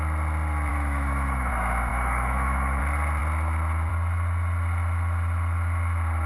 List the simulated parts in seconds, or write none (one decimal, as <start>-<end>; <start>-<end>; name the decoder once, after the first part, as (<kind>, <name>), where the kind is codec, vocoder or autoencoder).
0.7-1.5 (autoencoder, DAC-VAE); 1.9-2.8